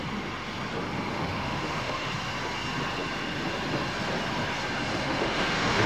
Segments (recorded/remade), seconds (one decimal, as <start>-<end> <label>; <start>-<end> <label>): 0.0-1.1 recorded; 1.1-2.1 remade; 2.1-4.9 recorded; 4.9-5.9 remade